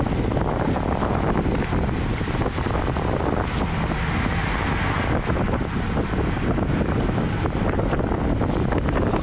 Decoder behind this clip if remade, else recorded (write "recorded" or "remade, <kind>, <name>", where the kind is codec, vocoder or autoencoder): recorded